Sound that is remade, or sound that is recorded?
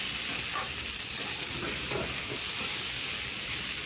recorded